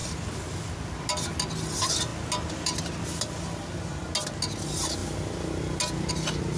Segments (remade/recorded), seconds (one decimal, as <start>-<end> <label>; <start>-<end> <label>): 0.0-6.6 recorded

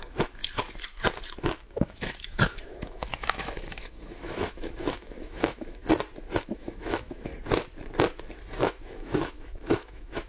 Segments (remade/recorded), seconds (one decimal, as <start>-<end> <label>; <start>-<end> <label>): 0.0-0.4 remade; 0.4-1.4 recorded; 1.4-5.8 remade; 5.8-6.4 recorded; 6.4-7.3 remade; 7.3-8.6 recorded; 8.6-10.3 remade

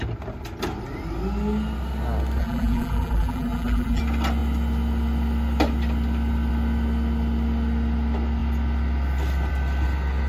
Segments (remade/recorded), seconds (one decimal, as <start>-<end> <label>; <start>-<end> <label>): 0.0-2.4 recorded; 2.4-4.0 remade; 4.0-10.3 recorded

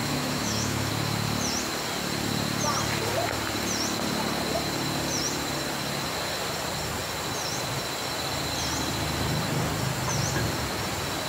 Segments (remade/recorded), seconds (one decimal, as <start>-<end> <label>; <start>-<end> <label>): 0.0-0.9 remade; 0.9-11.3 recorded